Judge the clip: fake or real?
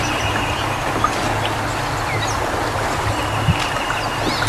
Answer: real